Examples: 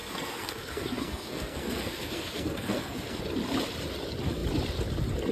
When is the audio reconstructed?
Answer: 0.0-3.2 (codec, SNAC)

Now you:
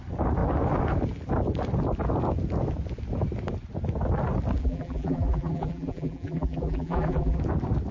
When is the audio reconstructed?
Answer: 4.6-7.4 (vocoder, BigVGAN v2)

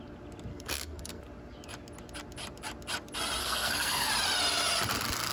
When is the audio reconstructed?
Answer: 0.5-1.2 (codec, SNAC); 3.4-4.1